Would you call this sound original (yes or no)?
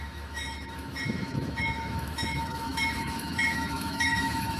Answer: no